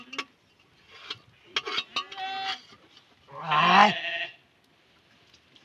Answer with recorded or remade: recorded